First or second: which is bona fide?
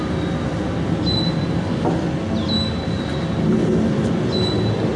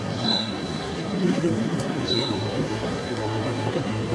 first